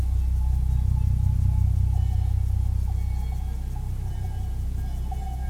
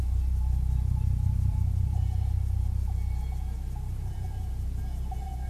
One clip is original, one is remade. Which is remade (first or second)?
second